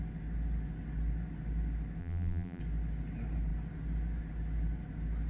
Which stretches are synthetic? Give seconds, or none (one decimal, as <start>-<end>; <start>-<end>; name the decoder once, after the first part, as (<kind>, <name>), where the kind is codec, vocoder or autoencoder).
2.0-2.6 (vocoder, BigVGAN v2)